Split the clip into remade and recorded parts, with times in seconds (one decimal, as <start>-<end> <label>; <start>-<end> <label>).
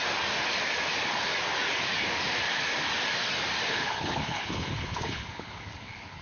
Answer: 0.0-3.7 recorded; 3.7-6.2 remade